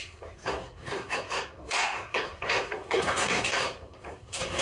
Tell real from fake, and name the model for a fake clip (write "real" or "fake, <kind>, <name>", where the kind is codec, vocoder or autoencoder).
fake, codec, SNAC